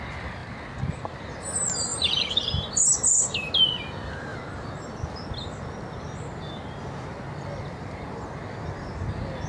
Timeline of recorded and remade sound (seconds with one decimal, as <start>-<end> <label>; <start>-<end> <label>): 0.0-1.9 recorded; 1.9-2.6 remade; 2.6-9.5 recorded